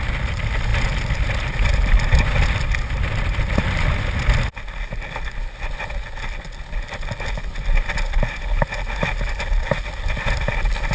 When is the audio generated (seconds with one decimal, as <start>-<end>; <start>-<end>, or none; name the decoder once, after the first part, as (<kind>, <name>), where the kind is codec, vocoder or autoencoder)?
none